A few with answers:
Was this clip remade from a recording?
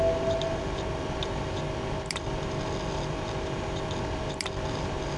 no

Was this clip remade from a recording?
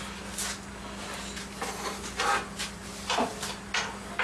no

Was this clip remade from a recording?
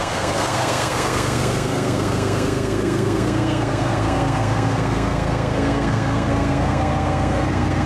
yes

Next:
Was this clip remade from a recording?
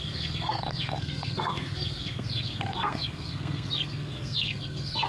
yes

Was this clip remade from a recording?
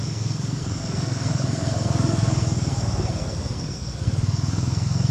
yes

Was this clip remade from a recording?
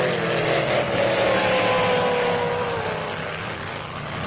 no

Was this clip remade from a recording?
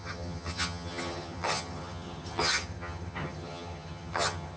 yes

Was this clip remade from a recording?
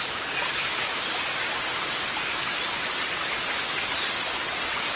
no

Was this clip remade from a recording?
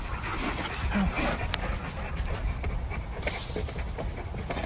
no